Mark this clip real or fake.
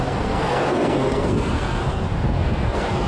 fake